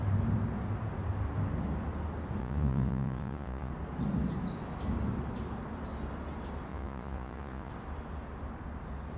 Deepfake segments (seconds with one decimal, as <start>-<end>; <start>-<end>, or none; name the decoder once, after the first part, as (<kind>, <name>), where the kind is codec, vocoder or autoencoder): 2.4-3.7 (vocoder, Vocos); 6.7-7.7